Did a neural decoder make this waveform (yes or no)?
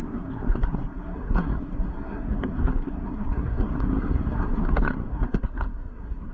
yes